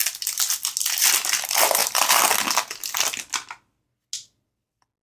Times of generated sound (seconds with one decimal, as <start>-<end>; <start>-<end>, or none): none